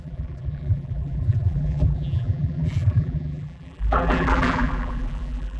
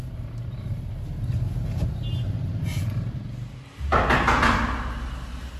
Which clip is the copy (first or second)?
first